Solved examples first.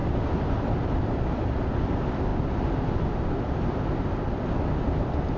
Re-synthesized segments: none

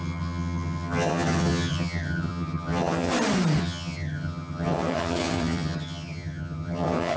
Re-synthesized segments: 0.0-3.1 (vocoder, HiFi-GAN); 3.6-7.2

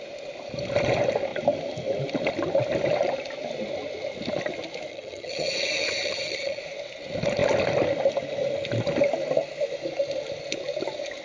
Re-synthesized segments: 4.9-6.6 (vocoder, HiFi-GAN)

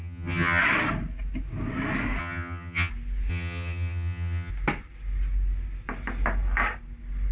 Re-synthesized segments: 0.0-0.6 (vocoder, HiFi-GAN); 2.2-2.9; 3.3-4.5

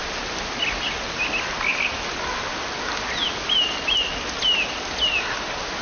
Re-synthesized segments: none

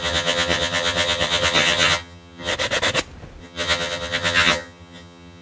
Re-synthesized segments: 0.0-2.5 (vocoder, HiFi-GAN); 3.4-5.4